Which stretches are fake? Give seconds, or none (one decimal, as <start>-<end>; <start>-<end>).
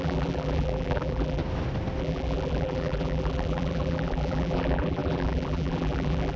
0.0-1.4; 2.0-6.4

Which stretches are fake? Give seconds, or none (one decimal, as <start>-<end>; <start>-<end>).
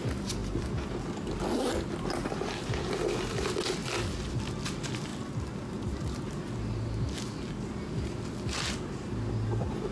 0.4-1.0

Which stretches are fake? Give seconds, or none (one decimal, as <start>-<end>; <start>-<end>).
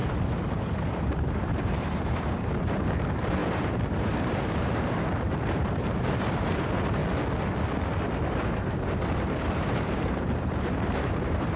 0.0-7.0; 8.4-11.6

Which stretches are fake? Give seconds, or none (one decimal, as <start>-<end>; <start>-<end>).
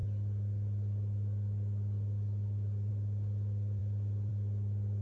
none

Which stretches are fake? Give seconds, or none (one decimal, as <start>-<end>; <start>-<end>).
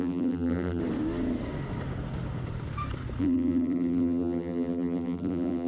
0.0-0.8; 3.2-5.7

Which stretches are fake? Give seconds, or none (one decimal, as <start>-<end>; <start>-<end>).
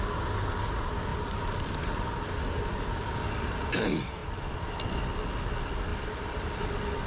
1.1-3.2; 4.2-4.8; 5.9-6.4